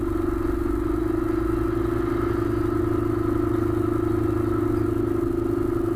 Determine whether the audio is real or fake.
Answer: real